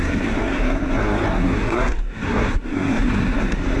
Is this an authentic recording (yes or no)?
no